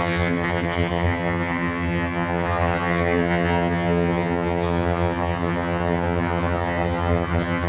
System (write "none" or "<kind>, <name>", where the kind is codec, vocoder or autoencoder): vocoder, HiFi-GAN